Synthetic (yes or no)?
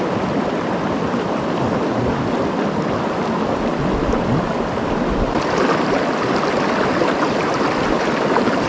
no